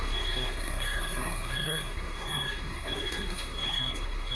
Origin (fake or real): fake